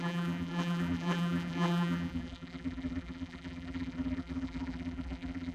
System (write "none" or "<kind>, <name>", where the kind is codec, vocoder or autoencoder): vocoder, BigVGAN v2